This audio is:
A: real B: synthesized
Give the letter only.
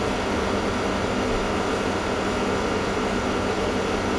A